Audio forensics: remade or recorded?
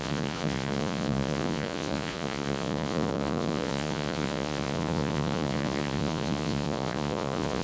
remade